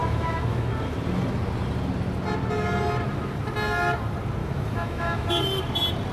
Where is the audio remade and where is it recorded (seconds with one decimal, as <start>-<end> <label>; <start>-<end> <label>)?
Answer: 0.0-0.7 remade; 0.7-4.4 recorded; 4.4-5.3 remade; 5.3-6.1 recorded